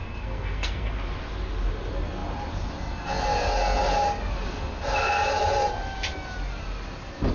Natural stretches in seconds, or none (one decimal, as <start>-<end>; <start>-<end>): 0.9-7.3